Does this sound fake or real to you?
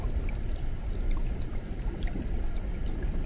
real